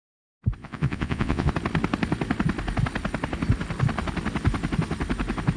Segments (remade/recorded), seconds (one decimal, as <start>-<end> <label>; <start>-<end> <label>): 0.0-0.6 recorded; 0.6-1.5 remade; 1.5-5.6 recorded